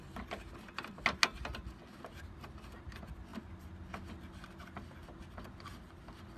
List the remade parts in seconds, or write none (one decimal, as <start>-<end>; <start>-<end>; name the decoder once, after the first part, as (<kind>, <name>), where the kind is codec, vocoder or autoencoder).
none